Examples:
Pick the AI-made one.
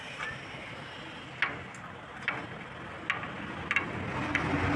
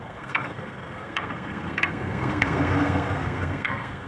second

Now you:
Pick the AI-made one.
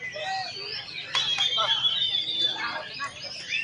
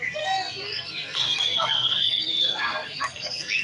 second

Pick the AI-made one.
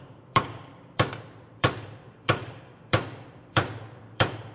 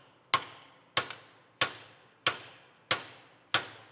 first